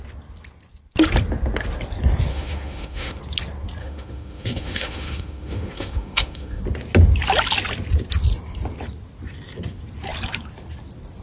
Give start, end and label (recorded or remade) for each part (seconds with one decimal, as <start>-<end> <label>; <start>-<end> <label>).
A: 0.0-2.3 recorded; 2.3-3.2 remade; 3.2-3.8 recorded; 3.8-6.6 remade; 6.6-11.2 recorded